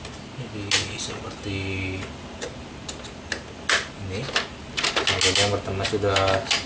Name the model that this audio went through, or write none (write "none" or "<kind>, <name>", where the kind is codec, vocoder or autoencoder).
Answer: none